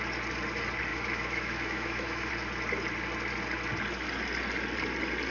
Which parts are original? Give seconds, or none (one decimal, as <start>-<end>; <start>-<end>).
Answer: 0.0-0.9; 2.3-5.3